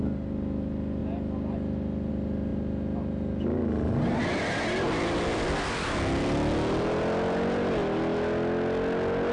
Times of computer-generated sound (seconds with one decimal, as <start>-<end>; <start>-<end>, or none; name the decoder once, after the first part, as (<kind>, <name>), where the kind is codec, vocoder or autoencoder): none